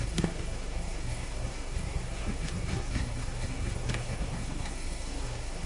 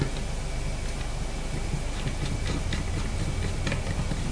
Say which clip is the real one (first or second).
second